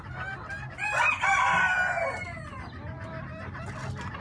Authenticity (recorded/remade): recorded